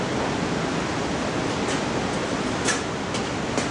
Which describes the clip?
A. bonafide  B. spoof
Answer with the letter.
A